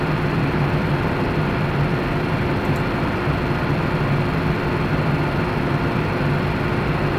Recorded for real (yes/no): yes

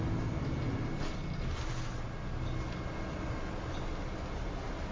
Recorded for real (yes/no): yes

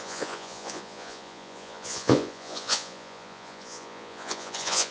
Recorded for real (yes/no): no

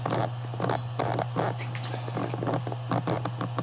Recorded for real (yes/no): yes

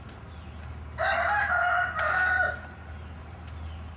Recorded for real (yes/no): yes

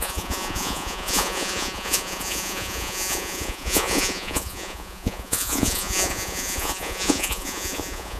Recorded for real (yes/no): no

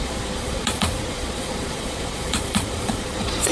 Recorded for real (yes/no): no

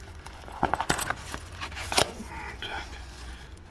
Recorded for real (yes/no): no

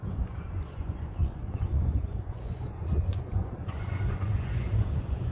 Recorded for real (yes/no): no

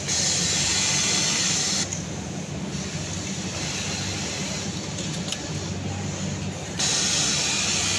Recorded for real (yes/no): yes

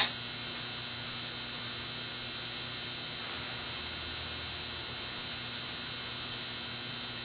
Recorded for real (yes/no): yes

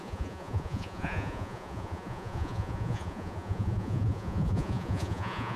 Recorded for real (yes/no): no